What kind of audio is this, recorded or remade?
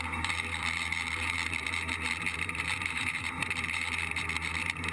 remade